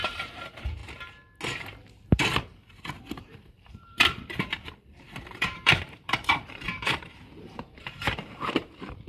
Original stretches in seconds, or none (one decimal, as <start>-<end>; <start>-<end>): 0.8-3.2